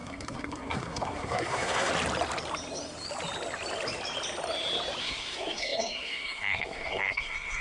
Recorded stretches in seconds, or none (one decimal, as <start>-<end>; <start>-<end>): 1.9-5.0